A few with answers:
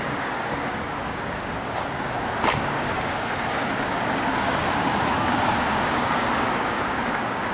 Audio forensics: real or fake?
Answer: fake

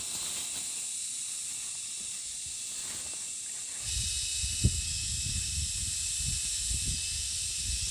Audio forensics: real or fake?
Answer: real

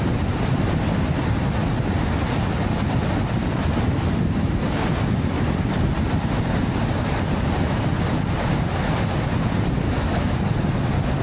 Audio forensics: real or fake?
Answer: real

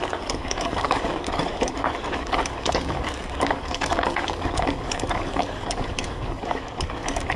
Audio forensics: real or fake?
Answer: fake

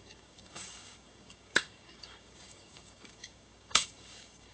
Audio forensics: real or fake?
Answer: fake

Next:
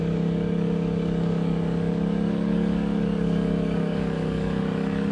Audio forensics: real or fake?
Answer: fake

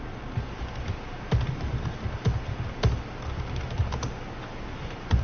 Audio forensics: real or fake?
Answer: real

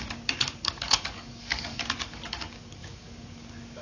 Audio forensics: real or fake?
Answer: fake